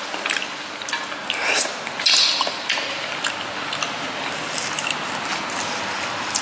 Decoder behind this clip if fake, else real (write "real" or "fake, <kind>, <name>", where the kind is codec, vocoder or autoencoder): real